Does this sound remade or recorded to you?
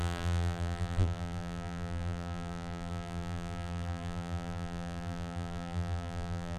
remade